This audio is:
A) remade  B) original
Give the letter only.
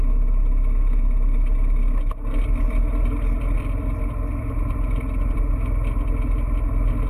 B